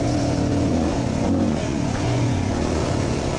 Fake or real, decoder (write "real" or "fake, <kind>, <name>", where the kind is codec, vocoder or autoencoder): fake, vocoder, Vocos